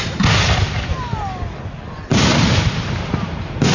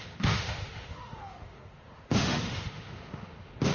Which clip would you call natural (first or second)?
first